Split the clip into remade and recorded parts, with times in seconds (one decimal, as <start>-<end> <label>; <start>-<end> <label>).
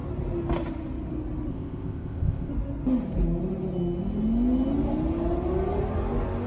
0.0-1.5 recorded; 1.5-2.5 remade; 2.5-6.5 recorded